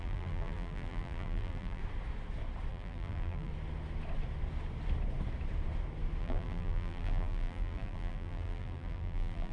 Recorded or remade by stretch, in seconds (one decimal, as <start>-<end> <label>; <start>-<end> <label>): 0.0-1.8 remade; 1.8-2.7 recorded; 2.7-3.5 remade; 3.5-6.2 recorded; 6.2-9.5 remade